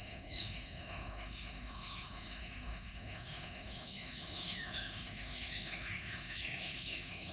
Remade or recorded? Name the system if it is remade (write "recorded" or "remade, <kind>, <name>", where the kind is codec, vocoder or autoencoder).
remade, autoencoder, DAC-VAE